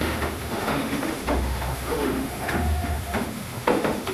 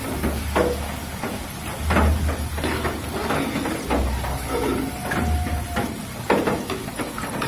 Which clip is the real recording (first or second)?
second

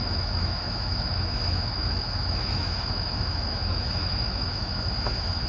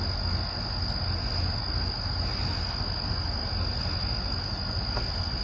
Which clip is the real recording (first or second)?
second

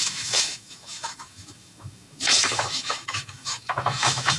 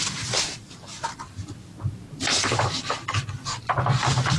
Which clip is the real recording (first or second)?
second